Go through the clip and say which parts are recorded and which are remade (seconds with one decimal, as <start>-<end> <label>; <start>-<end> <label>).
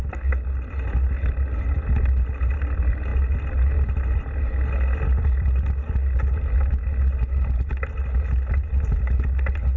0.0-9.8 recorded